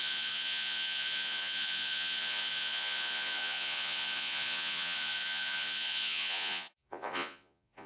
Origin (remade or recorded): remade